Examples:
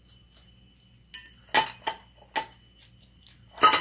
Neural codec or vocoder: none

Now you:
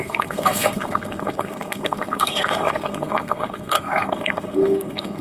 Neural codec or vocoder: codec, SNAC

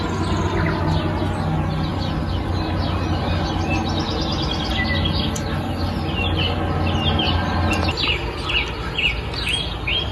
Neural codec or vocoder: none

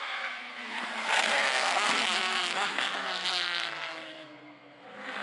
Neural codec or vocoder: codec, SNAC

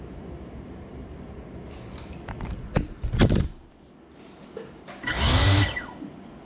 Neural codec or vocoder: none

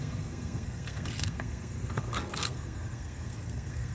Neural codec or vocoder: codec, SNAC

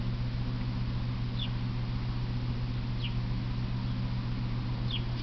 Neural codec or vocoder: none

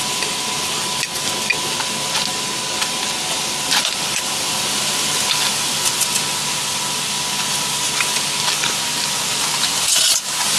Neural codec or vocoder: none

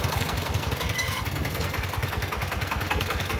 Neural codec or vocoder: codec, SNAC